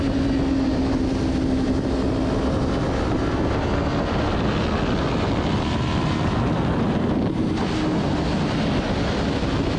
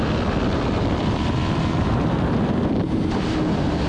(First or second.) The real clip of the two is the first